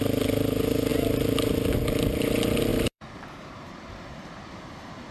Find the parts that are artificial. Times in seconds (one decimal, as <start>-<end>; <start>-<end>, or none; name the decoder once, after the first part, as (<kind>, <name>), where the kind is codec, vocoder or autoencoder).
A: 0.9-1.7 (vocoder, BigVGAN v2); 2.7-5.1